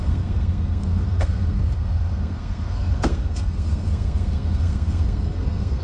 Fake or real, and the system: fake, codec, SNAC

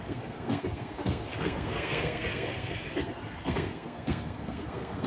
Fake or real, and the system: fake, codec, SNAC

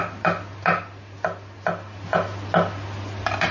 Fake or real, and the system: real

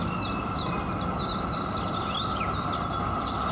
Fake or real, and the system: real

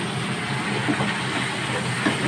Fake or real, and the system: real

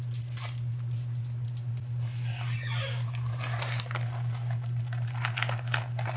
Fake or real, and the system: real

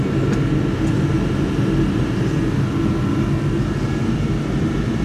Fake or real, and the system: real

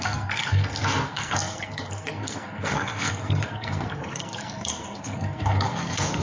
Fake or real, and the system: fake, codec, SNAC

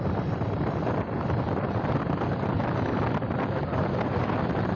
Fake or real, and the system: real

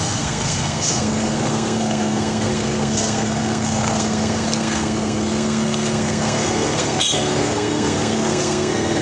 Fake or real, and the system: fake, codec, SNAC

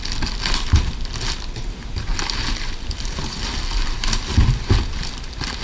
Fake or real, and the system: real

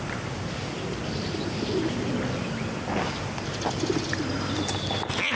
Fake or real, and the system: real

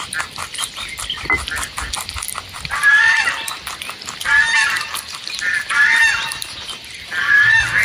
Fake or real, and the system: real